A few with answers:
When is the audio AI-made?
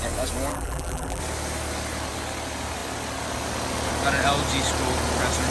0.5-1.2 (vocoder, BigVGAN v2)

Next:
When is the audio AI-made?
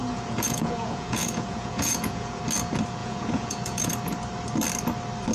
0.0-2.4 (vocoder, Vocos); 3.0-3.9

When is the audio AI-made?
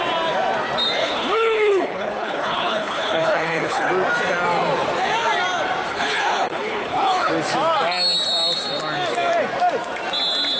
1.0-3.9 (codec, HILCodec); 5.9-7.3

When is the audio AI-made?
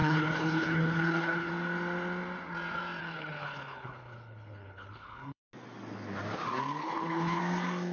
0.0-1.5 (codec, HILCodec); 3.0-5.4; 6.8-7.4